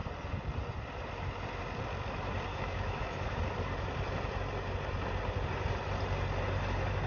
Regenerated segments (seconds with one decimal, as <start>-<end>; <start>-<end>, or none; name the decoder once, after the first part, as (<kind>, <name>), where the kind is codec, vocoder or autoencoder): 2.5-3.4 (autoencoder, DAC-VAE)